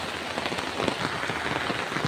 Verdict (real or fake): real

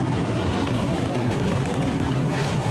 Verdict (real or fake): fake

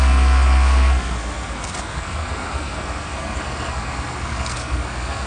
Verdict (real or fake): fake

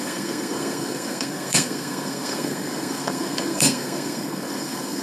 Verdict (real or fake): fake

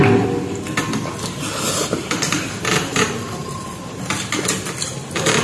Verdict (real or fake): real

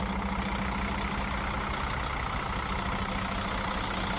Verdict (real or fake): real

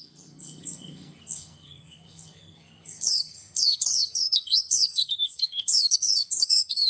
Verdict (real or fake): fake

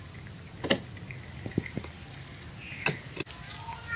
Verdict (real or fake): real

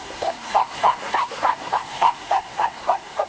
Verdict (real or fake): fake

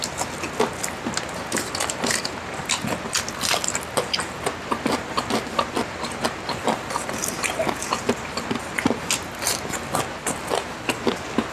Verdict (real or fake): real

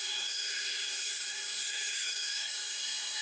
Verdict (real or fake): fake